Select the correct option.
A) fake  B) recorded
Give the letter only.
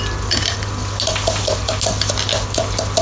B